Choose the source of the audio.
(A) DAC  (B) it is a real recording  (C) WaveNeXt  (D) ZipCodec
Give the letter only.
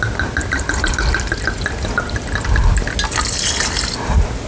B